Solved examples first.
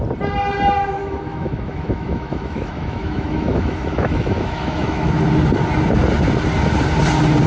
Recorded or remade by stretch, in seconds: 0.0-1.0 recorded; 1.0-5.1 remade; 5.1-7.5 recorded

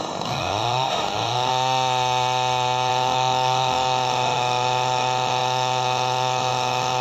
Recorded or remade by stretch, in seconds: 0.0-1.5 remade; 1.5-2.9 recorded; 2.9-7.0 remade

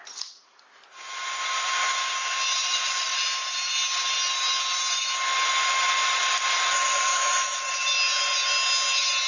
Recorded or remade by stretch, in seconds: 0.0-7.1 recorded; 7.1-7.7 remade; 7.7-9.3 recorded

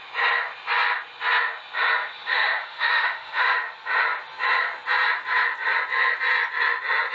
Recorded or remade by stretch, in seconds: 0.0-2.3 recorded; 2.3-3.6 remade; 3.6-7.1 recorded

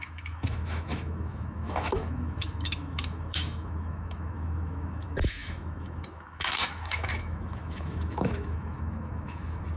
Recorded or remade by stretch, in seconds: 0.0-9.8 remade

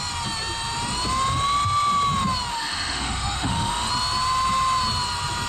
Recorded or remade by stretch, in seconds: 0.0-2.5 recorded; 2.5-3.9 remade; 3.9-5.5 recorded

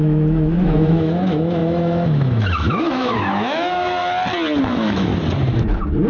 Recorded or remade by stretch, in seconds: 0.0-4.0 remade; 4.0-4.6 recorded; 4.6-5.1 remade; 5.1-6.1 recorded

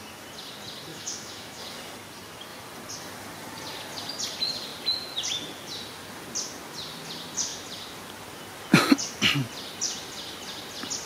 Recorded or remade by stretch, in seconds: 0.0-0.9 recorded; 0.9-1.6 remade; 1.6-11.1 recorded